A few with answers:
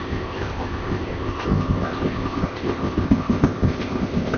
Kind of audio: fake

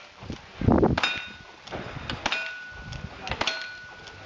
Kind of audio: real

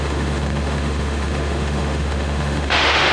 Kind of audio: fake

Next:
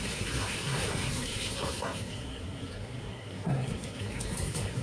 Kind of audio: fake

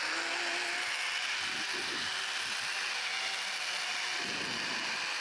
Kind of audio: real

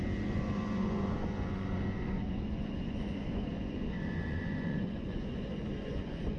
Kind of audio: fake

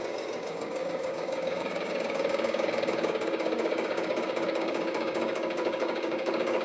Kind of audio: fake